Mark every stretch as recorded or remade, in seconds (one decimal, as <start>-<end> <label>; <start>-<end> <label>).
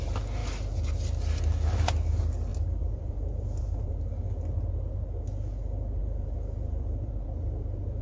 0.0-2.5 recorded; 2.5-3.9 remade; 3.9-6.0 recorded; 6.0-8.0 remade